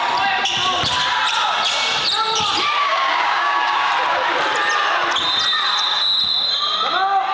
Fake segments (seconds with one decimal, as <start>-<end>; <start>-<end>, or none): 2.8-3.9